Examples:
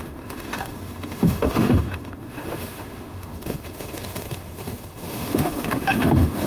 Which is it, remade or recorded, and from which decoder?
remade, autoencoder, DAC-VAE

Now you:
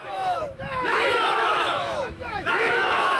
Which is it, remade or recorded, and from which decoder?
remade, autoencoder, DAC-VAE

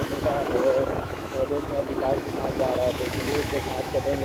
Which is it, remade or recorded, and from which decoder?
remade, autoencoder, DAC-VAE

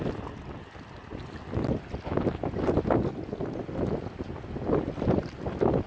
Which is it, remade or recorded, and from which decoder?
recorded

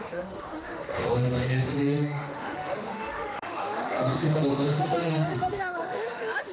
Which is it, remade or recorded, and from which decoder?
remade, autoencoder, DAC-VAE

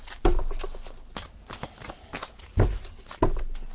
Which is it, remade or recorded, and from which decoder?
recorded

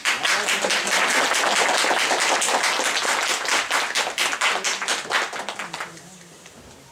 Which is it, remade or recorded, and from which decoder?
recorded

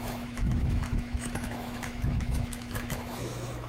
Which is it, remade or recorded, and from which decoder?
remade, autoencoder, DAC-VAE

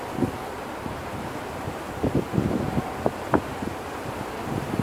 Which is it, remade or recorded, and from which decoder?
recorded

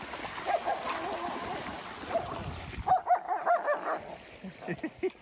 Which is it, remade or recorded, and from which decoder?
recorded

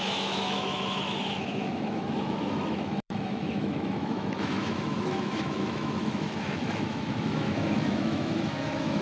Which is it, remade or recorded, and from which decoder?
remade, autoencoder, DAC-VAE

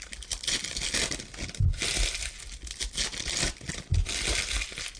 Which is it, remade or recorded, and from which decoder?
recorded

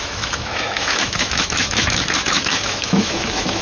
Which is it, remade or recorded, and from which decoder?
remade, autoencoder, DAC-VAE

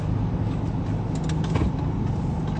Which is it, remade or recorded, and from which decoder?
recorded